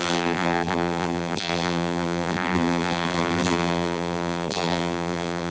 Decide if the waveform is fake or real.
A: fake